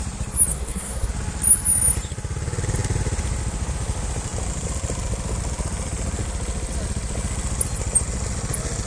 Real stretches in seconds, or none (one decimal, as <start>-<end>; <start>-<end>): 0.0-0.5; 1.1-8.9

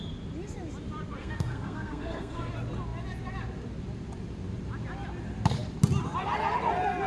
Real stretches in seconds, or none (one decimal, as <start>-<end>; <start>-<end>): 0.0-1.2; 2.5-7.1

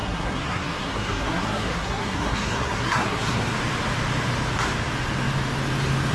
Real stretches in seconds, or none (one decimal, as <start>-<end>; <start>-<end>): 3.5-6.1

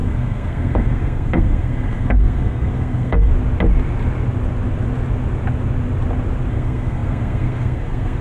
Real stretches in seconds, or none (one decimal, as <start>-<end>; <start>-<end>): 3.3-6.5

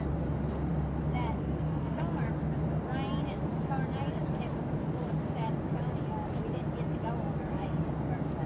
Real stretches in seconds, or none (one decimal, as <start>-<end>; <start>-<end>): 0.0-1.4; 2.0-8.5

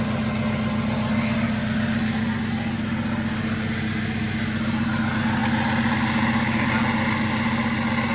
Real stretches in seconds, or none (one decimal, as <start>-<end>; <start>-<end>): 0.0-8.1

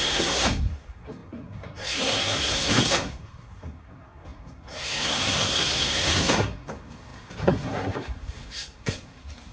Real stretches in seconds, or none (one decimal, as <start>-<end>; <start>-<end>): none

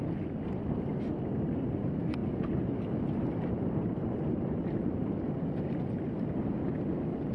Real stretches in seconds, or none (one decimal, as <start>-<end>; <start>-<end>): 0.0-7.3